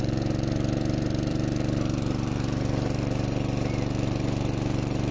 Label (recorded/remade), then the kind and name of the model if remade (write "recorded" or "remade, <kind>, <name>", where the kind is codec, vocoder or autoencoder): remade, vocoder, BigVGAN v2